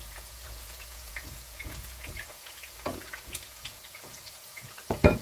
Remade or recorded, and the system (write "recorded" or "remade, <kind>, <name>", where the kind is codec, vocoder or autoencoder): remade, vocoder, Vocos